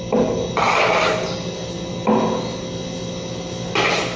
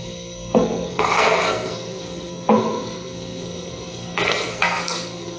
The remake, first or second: second